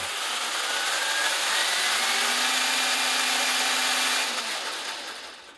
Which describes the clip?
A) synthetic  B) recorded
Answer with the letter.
B